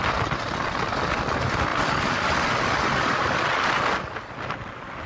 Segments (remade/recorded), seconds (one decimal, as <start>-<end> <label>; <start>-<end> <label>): 0.0-5.1 recorded